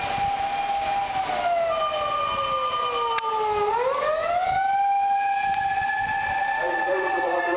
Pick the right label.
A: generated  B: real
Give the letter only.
B